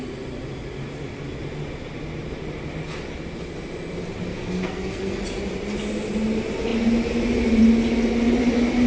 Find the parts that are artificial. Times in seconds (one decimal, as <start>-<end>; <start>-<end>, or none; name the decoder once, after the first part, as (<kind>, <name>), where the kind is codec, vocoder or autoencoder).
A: 4.3-5.2 (codec, SNAC)